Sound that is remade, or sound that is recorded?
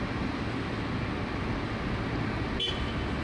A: recorded